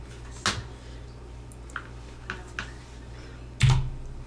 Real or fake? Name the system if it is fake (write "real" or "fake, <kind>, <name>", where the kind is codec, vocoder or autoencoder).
real